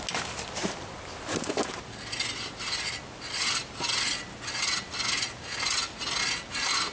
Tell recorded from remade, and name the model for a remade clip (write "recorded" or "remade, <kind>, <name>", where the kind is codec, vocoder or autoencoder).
recorded